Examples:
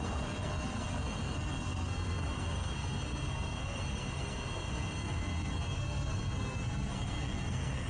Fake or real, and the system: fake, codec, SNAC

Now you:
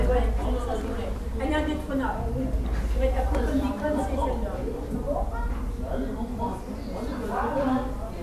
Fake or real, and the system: real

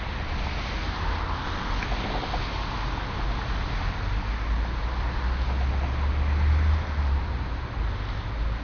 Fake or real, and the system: real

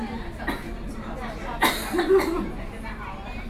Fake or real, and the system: real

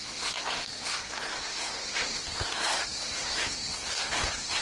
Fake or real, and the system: fake, codec, SNAC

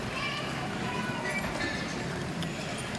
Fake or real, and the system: real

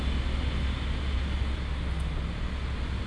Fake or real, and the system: real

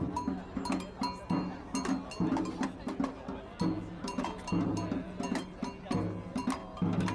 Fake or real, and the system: real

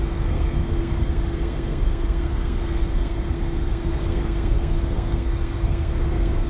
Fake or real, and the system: fake, codec, SNAC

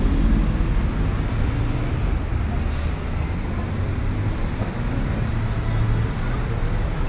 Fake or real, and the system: real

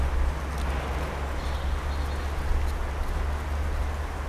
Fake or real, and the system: real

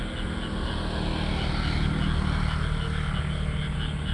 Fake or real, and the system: real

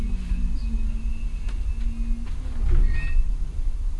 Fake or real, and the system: real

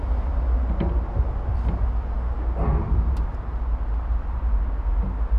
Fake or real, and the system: real